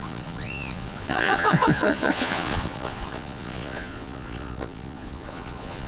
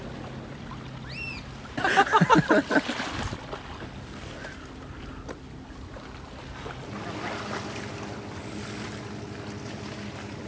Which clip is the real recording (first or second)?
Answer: second